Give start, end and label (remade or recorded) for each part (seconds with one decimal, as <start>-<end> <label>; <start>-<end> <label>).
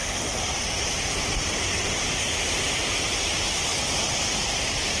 0.0-2.3 recorded; 2.3-3.7 remade; 3.7-4.4 recorded; 4.4-5.0 remade